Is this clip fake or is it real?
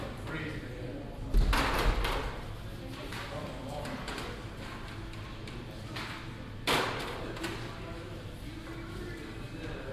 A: real